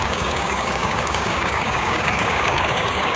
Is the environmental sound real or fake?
fake